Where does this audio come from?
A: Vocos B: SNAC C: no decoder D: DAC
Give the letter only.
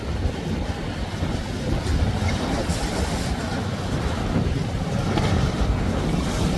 C